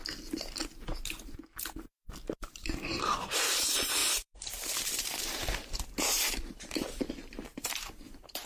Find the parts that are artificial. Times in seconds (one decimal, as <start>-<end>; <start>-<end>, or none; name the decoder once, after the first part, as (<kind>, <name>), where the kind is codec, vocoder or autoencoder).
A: 2.4-8.5 (vocoder, BigVGAN v2)